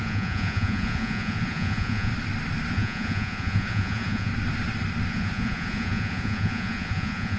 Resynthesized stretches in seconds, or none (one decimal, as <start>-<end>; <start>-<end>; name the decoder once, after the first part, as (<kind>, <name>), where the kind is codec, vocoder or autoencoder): 0.0-2.1 (vocoder, Vocos); 2.7-4.3; 5.1-7.4